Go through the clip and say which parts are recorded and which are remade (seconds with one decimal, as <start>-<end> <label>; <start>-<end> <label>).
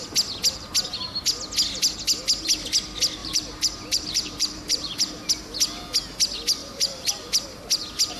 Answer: 0.0-3.2 recorded; 3.2-5.3 remade; 5.3-6.6 recorded; 6.6-7.1 remade; 7.1-8.2 recorded